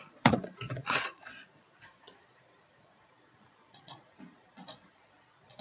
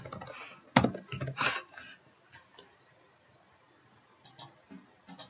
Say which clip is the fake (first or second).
first